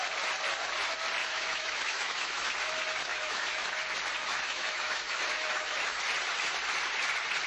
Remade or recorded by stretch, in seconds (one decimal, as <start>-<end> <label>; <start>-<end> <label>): 0.0-1.2 recorded; 1.2-2.5 remade; 2.5-3.1 recorded; 3.1-3.7 remade; 3.7-4.2 recorded; 4.2-6.0 remade; 6.0-7.5 recorded

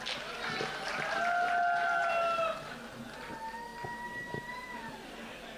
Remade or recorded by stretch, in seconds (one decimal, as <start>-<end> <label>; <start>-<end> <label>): 0.0-5.6 recorded

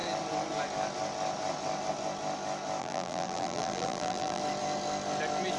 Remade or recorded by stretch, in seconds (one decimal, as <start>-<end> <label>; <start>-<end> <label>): 0.0-2.8 recorded; 2.8-4.4 remade; 4.4-5.6 recorded

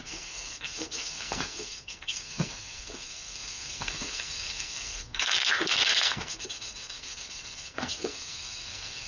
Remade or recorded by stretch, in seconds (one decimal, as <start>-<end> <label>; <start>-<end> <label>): 0.0-9.1 remade

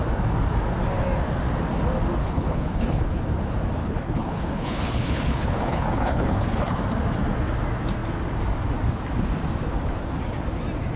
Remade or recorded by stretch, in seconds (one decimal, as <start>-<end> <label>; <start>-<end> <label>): 0.0-2.2 recorded; 2.2-3.2 remade; 3.2-3.8 recorded; 3.8-6.8 remade; 6.8-11.0 recorded

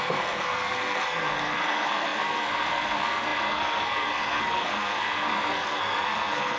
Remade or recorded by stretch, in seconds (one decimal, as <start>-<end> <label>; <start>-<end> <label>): 0.0-6.6 remade